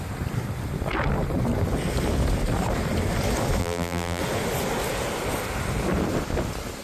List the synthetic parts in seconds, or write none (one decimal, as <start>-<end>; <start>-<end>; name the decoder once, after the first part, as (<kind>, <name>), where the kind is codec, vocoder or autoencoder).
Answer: 3.6-4.2 (vocoder, BigVGAN v2)